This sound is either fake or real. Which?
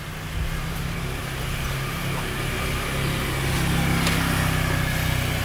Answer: real